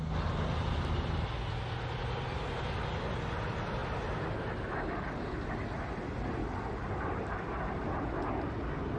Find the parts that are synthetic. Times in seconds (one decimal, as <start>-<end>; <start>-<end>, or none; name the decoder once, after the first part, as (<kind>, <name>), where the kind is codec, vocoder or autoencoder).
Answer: none